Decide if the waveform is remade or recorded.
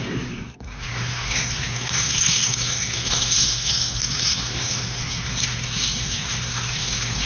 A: remade